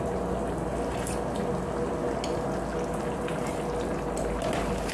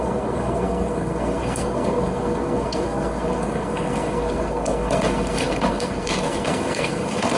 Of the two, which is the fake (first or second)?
second